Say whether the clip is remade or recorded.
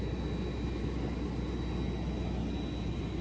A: recorded